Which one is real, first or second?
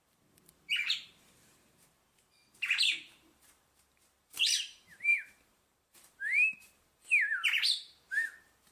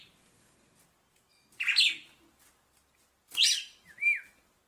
second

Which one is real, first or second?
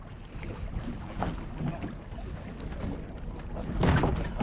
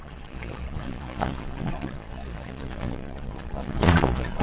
first